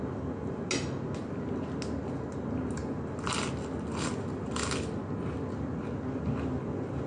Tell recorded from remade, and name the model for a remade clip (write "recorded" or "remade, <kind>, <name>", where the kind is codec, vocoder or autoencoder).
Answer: recorded